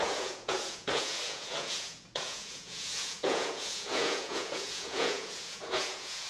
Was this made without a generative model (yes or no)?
no